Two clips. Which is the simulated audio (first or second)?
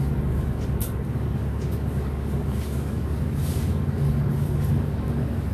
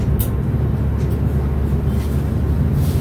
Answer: first